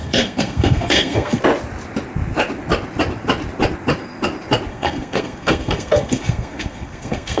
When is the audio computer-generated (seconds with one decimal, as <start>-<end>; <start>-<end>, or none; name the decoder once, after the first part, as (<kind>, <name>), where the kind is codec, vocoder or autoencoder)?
0.0-1.4 (codec, SNAC); 4.7-7.4